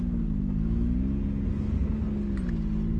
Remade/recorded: recorded